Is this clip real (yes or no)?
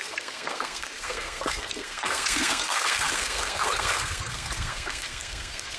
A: no